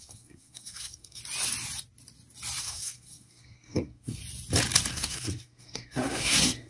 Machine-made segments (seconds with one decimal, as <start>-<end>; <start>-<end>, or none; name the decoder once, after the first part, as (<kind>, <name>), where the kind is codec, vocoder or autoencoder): 0.0-1.2 (codec, SNAC); 2.6-4.2; 4.9-6.7